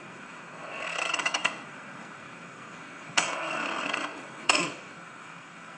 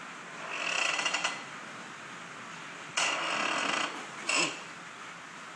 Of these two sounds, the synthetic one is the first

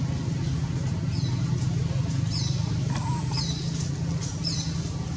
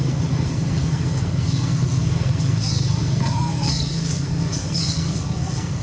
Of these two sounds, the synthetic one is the second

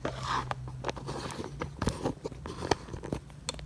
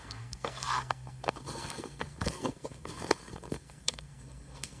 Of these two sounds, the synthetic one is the second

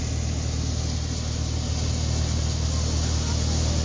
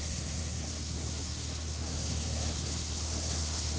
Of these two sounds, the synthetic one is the second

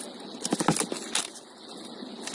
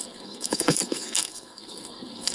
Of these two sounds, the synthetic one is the second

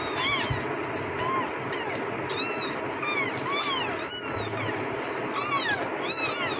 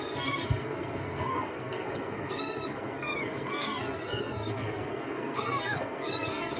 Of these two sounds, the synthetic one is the second